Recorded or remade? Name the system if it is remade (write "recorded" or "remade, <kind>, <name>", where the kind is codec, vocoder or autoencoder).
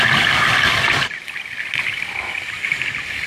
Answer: recorded